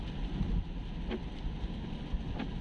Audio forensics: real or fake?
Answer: real